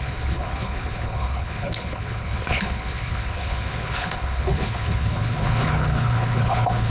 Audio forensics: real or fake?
fake